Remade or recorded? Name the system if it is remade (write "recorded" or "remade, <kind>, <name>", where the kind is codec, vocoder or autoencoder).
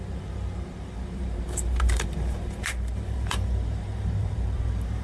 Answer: remade, vocoder, BigVGAN v2